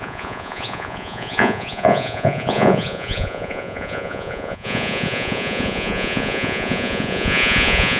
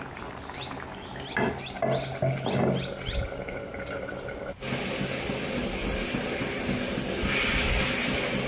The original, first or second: second